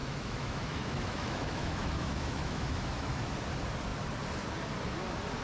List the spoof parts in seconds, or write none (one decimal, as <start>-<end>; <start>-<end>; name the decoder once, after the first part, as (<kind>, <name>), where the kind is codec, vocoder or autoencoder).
0.0-3.2 (autoencoder, DAC-VAE)